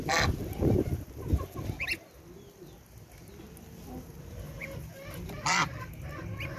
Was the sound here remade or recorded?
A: recorded